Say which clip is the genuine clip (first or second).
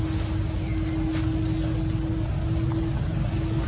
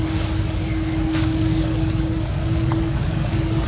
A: first